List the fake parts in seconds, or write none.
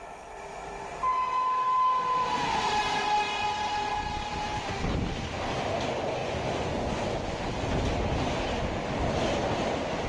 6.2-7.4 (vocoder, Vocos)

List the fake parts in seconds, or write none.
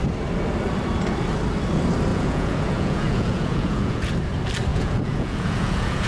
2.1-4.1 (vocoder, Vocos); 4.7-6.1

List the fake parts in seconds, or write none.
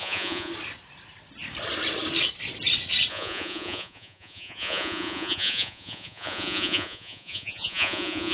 0.0-0.5 (vocoder, Vocos); 3.1-8.3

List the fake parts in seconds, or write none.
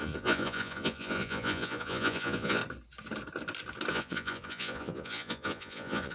0.0-2.6 (vocoder, Vocos); 3.9-6.1